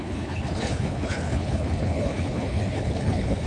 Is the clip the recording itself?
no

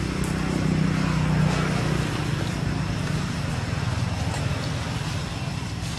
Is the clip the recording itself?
yes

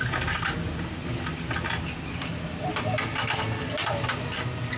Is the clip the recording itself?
yes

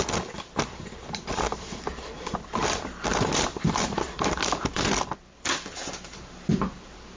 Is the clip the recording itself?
no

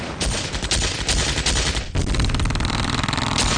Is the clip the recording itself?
yes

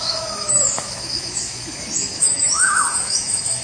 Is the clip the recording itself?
no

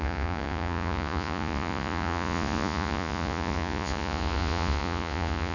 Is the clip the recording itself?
no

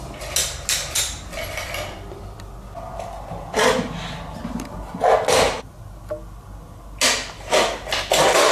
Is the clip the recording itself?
yes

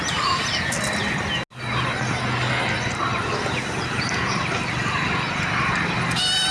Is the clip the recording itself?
yes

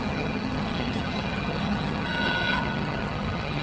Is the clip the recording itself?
no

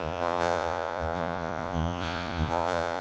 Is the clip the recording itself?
no